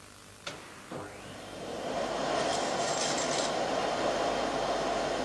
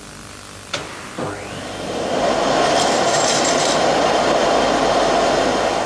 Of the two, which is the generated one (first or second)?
second